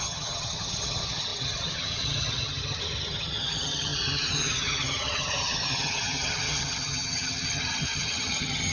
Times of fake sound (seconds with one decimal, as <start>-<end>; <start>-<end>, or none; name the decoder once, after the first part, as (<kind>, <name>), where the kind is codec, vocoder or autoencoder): 0.0-8.7 (vocoder, HiFi-GAN)